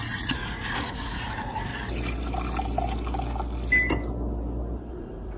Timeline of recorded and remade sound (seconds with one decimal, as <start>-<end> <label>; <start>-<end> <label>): 0.0-1.7 remade; 1.7-4.9 recorded; 4.9-5.4 remade